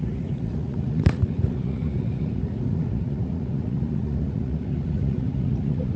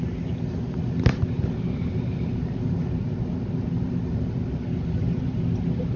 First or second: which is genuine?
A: second